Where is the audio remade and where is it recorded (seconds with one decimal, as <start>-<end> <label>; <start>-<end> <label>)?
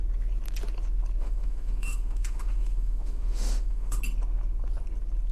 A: 0.0-1.2 recorded; 1.2-4.0 remade; 4.0-5.3 recorded